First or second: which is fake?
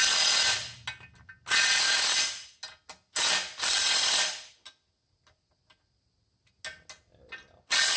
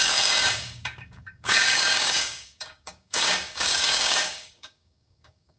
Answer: second